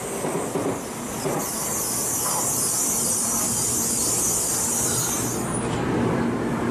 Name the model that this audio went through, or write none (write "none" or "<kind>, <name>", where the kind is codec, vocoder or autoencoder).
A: none